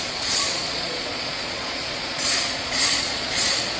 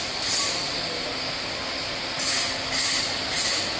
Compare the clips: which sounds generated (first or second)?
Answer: first